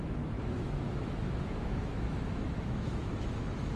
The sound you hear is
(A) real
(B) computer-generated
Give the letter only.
B